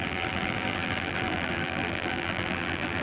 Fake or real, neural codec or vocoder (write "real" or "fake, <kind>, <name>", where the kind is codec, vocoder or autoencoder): fake, vocoder, BigVGAN v2